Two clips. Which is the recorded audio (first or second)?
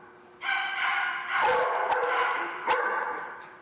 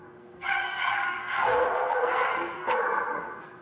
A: first